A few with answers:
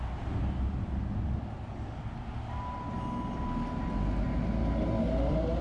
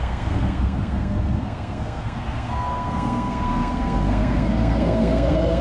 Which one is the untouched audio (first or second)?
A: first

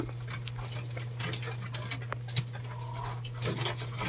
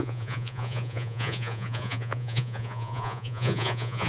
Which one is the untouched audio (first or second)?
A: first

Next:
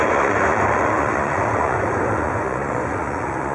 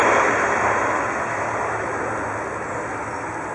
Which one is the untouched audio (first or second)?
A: second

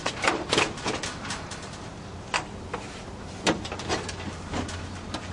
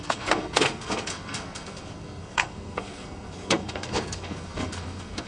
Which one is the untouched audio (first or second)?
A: first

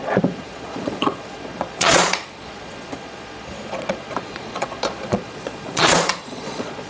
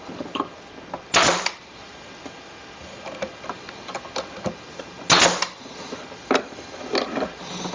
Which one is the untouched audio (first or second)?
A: second